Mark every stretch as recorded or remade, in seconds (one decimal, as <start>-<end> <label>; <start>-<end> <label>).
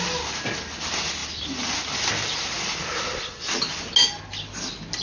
0.0-5.0 recorded